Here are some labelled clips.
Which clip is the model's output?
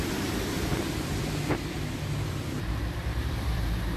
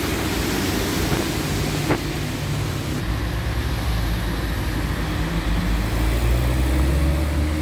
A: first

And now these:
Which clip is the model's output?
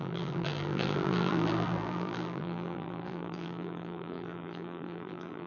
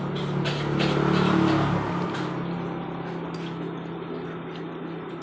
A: first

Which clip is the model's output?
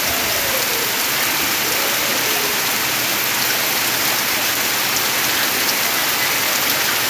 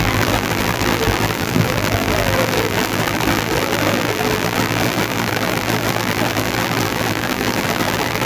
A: second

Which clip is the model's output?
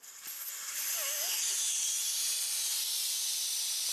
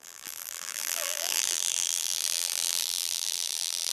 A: second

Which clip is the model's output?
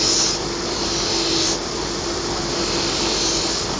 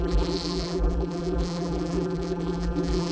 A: second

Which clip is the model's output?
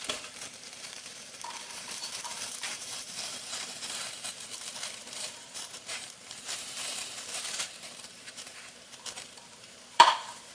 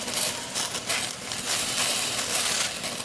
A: first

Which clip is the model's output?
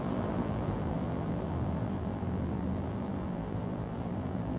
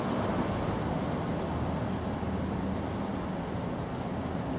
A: first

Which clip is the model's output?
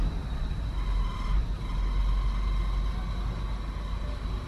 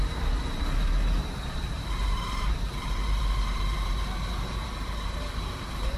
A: second